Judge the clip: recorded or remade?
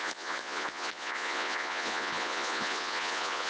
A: remade